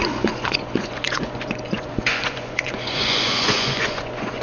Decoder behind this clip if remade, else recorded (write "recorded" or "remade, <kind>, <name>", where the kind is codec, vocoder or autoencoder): remade, vocoder, Vocos